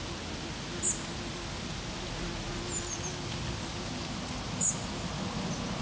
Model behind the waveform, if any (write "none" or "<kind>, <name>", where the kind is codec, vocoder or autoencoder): none